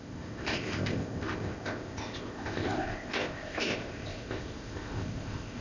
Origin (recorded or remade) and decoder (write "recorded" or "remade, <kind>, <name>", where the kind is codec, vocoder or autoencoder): remade, codec, ZipCodec